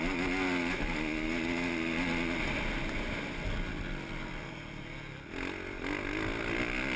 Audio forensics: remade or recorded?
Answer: recorded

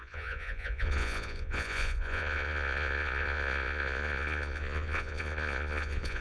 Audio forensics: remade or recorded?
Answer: remade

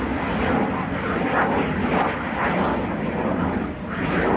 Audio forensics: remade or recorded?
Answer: recorded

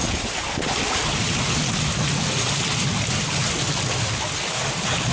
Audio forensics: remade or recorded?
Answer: recorded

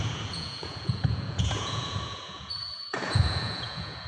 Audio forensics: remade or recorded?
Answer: remade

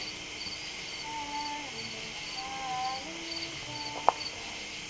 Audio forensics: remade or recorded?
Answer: recorded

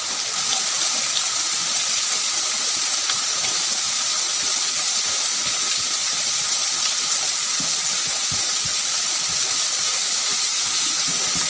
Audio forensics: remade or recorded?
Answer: recorded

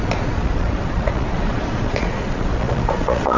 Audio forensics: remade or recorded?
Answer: remade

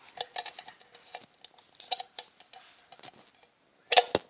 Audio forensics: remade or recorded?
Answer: recorded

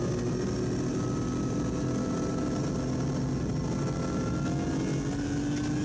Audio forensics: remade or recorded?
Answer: recorded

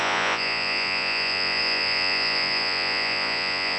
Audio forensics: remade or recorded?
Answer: remade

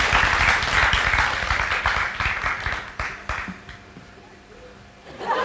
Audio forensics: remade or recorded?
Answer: recorded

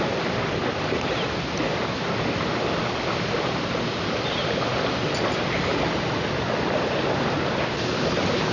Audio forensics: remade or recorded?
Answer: recorded